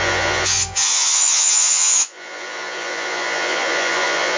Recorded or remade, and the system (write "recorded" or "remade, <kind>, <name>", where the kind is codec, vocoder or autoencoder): remade, vocoder, Vocos